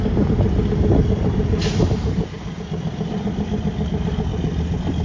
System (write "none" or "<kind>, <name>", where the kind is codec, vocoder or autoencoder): none